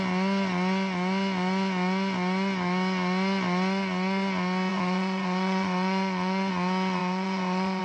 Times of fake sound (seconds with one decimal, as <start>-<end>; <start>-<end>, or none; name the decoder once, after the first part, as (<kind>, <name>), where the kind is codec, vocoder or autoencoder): 4.7-6.5 (vocoder, Vocos); 7.0-7.8

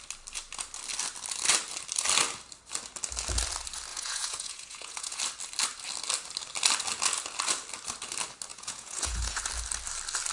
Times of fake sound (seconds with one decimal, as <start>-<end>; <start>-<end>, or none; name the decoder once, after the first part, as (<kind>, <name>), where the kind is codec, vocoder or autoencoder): 3.9-5.2 (vocoder, Vocos); 8.5-9.4

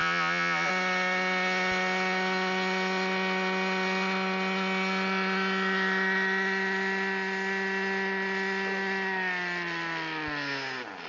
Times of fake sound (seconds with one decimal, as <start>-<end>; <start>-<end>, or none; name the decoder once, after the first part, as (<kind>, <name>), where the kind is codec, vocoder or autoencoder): 0.0-0.7 (vocoder, Vocos)

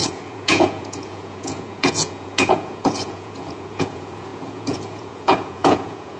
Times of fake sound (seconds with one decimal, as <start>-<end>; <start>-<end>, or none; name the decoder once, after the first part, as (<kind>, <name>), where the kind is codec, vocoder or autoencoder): 0.0-6.2 (vocoder, Vocos)

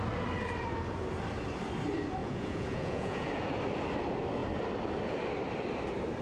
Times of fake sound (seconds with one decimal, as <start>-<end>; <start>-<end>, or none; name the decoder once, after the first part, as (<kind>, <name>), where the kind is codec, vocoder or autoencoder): 2.2-3.3 (vocoder, Vocos)